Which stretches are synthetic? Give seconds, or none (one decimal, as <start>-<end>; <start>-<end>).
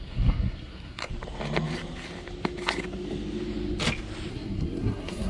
0.0-1.1; 4.3-5.3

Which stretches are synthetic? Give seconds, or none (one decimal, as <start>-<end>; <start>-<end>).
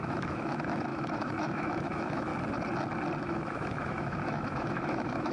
0.0-2.3; 3.2-5.3